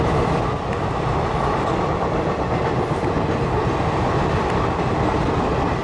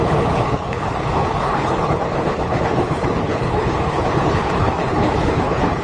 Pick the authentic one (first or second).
first